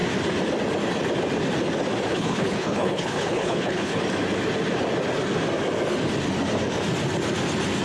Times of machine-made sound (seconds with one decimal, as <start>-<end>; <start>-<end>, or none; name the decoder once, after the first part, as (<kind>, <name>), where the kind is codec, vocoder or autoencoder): 2.1-4.0 (codec, HILCodec)